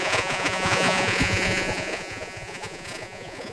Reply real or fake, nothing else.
fake